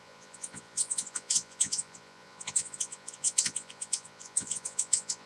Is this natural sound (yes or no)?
no